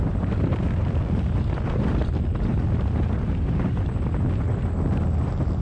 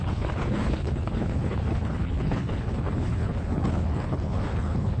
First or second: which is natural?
first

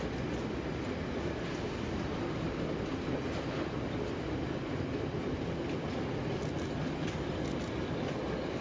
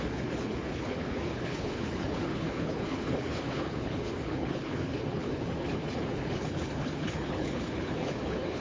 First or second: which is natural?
first